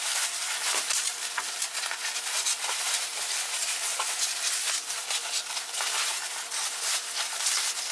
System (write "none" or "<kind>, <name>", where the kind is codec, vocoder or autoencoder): none